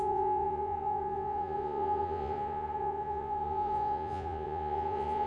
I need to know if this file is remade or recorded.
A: remade